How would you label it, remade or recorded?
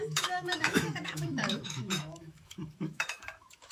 remade